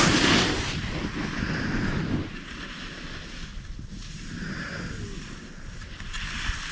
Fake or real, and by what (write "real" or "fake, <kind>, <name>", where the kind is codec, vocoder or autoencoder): real